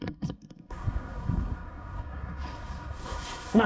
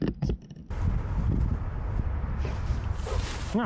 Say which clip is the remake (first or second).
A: first